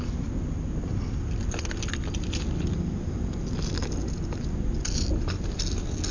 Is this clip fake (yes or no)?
no